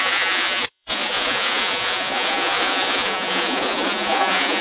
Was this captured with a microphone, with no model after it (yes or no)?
no